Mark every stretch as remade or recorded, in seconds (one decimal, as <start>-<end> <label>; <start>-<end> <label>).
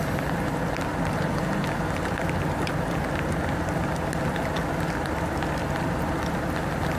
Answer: 0.0-7.0 recorded